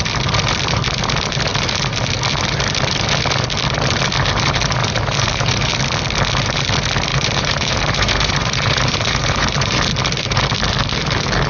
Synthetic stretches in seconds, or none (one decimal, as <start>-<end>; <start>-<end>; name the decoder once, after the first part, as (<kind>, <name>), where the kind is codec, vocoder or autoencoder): 4.8-5.7 (vocoder, BigVGAN v2); 7.1-9.8